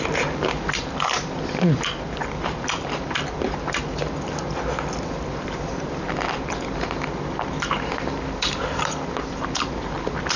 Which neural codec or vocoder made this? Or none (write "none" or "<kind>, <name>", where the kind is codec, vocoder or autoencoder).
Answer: vocoder, BigVGAN v2